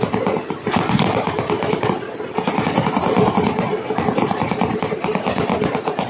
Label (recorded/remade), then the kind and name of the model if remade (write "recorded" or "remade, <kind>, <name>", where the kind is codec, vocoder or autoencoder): recorded